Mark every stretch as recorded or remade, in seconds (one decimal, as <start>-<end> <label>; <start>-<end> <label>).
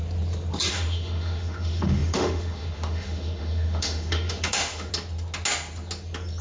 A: 0.0-0.7 recorded; 0.7-4.9 remade; 4.9-6.4 recorded